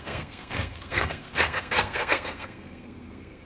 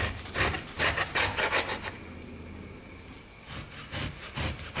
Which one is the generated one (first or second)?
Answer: first